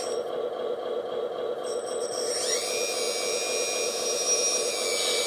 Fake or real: real